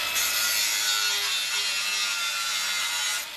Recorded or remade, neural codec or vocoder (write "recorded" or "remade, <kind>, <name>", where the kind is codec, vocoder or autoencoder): recorded